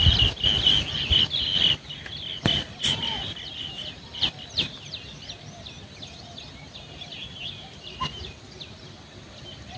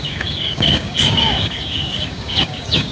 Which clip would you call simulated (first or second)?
second